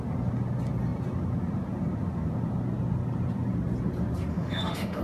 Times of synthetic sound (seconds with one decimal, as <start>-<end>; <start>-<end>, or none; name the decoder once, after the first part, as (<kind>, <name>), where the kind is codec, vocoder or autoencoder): 4.3-5.0 (autoencoder, DAC-VAE)